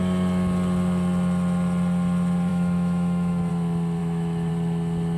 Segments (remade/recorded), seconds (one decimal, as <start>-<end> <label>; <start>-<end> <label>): 0.0-2.5 recorded; 2.5-3.5 remade; 3.5-4.0 recorded; 4.0-4.5 remade; 4.5-5.2 recorded